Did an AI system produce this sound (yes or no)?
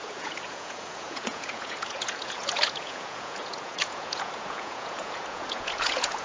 yes